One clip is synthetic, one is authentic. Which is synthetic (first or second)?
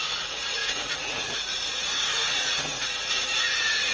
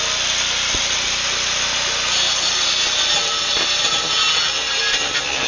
first